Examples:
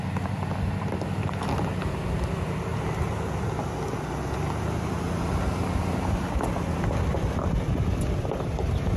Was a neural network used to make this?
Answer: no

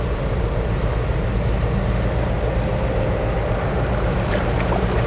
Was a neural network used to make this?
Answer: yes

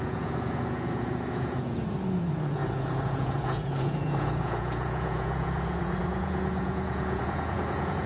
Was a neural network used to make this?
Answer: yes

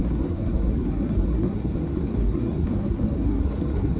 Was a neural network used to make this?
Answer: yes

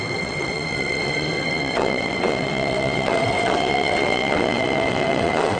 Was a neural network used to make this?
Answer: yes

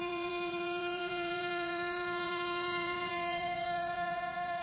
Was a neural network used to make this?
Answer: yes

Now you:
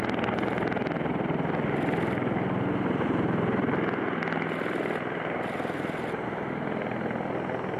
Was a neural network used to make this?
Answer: no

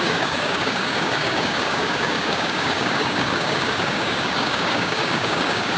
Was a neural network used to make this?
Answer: yes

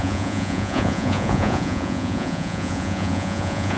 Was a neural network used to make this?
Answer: yes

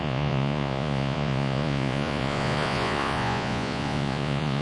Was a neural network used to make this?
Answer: yes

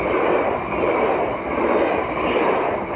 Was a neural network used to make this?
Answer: no